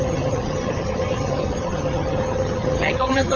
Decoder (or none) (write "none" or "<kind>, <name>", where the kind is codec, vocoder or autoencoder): vocoder, HiFi-GAN